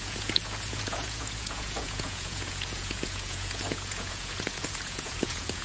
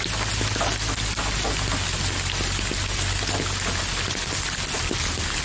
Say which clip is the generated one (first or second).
first